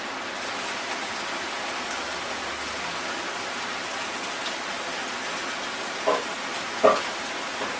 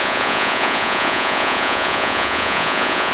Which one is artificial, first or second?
second